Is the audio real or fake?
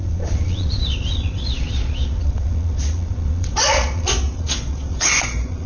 fake